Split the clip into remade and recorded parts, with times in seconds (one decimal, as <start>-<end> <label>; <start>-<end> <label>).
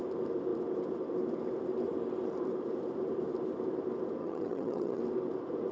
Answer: 0.0-4.2 recorded; 4.2-5.0 remade; 5.0-5.7 recorded